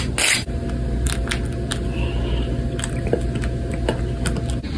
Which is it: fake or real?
real